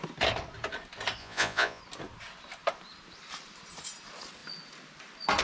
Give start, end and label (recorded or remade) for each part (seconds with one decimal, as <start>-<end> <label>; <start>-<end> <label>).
0.0-1.2 recorded; 1.2-1.8 remade; 1.8-5.4 recorded